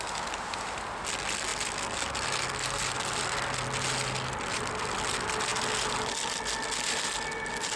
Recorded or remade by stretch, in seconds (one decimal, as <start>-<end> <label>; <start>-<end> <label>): 0.0-7.8 recorded